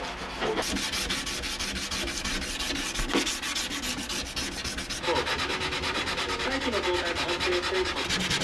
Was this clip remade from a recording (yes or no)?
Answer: no